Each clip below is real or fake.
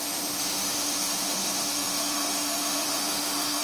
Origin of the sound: fake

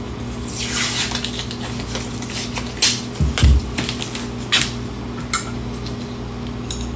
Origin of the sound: real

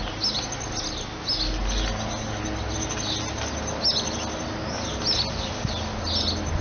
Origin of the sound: real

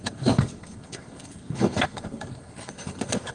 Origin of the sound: fake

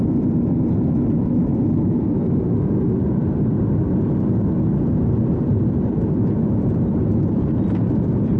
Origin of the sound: real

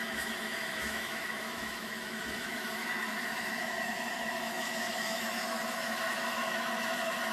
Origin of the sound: fake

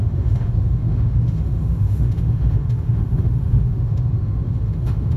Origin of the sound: fake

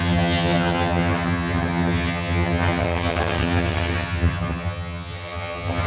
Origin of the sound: fake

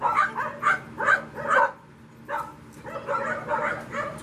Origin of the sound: real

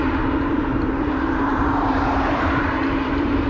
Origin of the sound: fake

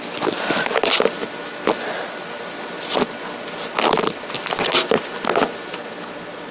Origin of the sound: real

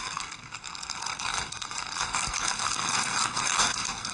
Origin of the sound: fake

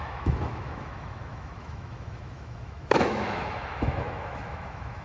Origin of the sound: fake